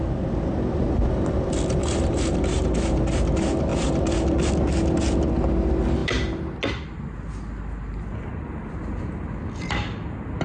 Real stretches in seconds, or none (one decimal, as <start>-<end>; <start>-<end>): 0.0-1.8; 3.2-3.7; 4.5-10.4